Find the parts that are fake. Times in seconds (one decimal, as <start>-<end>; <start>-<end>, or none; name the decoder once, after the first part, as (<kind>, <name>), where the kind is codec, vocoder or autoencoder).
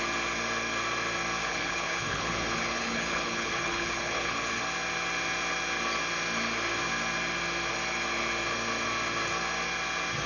1.4-4.6 (codec, HILCodec)